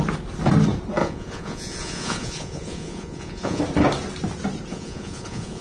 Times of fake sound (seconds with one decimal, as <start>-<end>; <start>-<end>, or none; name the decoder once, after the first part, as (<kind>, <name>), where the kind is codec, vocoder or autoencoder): 1.0-3.6 (vocoder, Vocos); 4.7-5.6